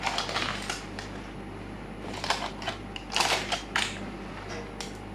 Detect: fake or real real